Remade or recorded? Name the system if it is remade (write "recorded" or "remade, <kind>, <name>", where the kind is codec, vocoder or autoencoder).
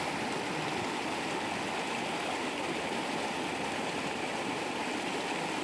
recorded